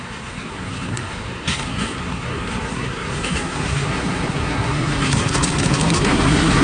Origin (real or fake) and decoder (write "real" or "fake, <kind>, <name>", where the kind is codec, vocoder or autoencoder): fake, codec, SNAC